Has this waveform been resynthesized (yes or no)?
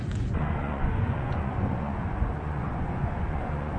yes